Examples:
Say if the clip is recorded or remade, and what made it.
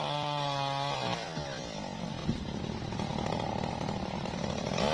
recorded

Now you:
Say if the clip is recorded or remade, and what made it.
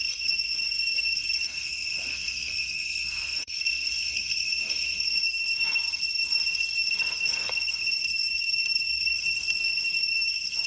remade, codec, SNAC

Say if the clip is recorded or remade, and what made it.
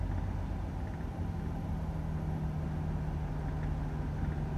recorded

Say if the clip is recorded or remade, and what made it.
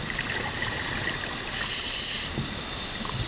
recorded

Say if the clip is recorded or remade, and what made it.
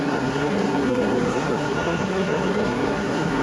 remade, codec, SNAC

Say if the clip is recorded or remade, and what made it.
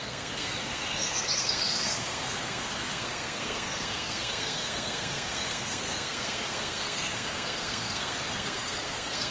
remade, codec, SNAC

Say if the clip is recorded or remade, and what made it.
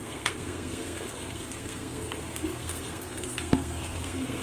remade, codec, SNAC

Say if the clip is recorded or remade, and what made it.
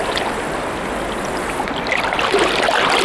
recorded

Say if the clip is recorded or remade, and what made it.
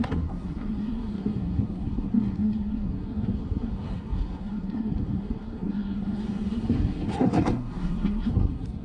remade, codec, SNAC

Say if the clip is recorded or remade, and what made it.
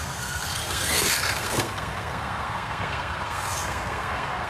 remade, codec, SNAC